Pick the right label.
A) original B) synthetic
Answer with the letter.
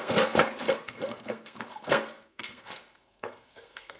B